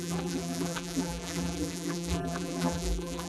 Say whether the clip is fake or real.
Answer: fake